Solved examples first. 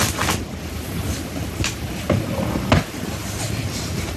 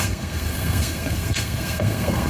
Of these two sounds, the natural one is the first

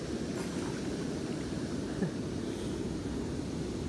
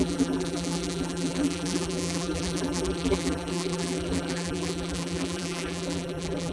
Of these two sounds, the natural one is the first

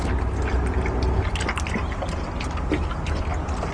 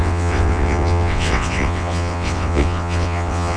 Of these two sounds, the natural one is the first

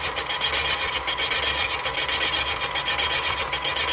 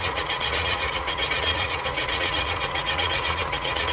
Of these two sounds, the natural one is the first